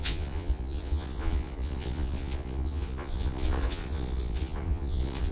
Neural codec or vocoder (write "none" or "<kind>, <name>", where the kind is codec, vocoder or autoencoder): vocoder, Vocos